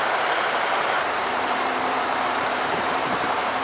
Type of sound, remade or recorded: remade